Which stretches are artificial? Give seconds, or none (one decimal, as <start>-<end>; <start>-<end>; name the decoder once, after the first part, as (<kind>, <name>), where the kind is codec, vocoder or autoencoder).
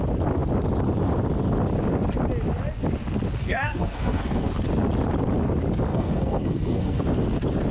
3.4-4.5 (codec, SNAC); 5.9-7.0